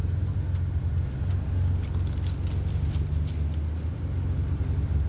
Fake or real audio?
real